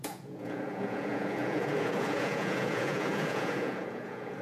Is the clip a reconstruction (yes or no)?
yes